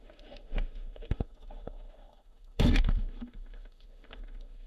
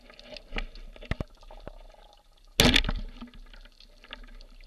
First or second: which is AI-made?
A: first